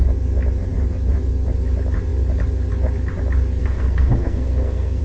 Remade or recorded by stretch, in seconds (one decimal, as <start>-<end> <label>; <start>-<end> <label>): 0.0-3.6 recorded; 3.6-5.0 remade